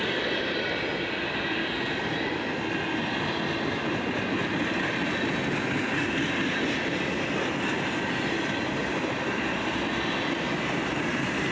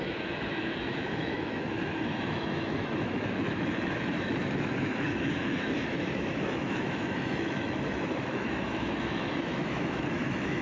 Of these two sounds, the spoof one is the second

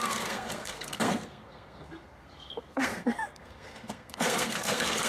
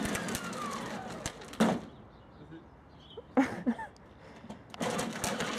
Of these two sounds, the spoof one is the first